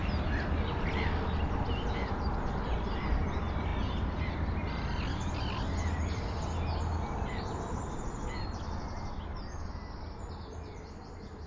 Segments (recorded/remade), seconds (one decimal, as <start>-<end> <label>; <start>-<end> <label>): 0.0-11.5 recorded